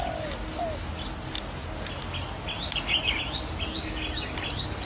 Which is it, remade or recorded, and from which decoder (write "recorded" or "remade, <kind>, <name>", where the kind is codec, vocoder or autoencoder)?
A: recorded